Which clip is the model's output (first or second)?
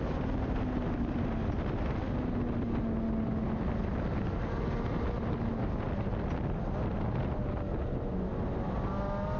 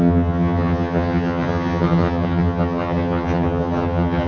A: second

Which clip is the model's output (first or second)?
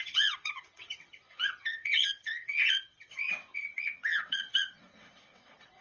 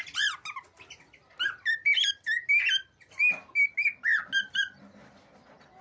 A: first